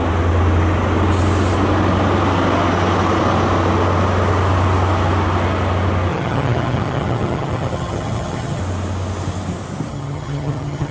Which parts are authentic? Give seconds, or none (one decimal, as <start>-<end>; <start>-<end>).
0.0-6.1; 8.6-9.9